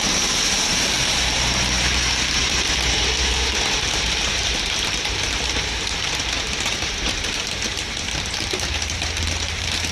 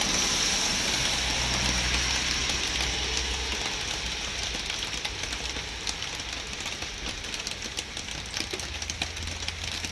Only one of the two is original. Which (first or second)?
second